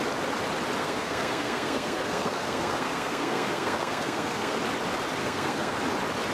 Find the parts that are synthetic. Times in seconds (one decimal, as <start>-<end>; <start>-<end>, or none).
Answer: 0.8-4.6; 5.2-5.8

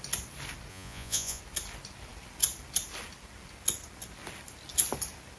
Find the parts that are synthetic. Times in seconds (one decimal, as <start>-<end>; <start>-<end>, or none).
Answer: 0.7-1.4

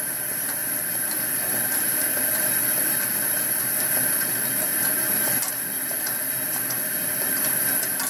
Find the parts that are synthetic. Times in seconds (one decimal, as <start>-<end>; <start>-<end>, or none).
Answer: none

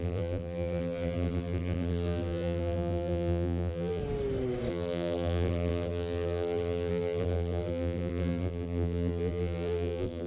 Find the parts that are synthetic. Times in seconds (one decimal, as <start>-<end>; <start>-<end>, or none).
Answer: 0.0-4.0; 4.7-10.3

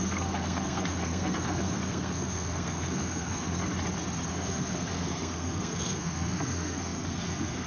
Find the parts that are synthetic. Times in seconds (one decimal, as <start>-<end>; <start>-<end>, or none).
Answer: 0.0-3.6; 4.3-7.7

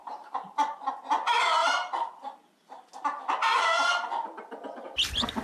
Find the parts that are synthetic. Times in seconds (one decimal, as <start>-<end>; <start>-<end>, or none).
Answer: 0.0-0.9

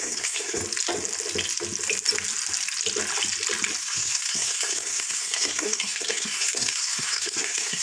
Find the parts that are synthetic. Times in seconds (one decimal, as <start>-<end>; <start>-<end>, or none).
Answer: 0.0-0.6; 3.8-7.8

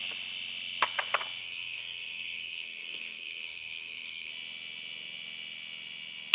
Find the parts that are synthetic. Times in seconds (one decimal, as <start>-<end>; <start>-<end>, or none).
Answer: 1.4-4.3